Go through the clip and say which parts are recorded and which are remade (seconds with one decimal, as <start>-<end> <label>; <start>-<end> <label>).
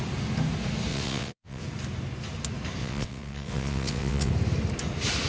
0.0-0.9 recorded; 0.9-1.6 remade; 1.6-2.8 recorded; 2.8-4.3 remade; 4.3-5.3 recorded